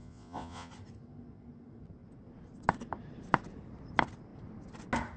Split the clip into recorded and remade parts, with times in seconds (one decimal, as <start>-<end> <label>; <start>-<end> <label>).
0.0-0.7 remade; 0.7-5.2 recorded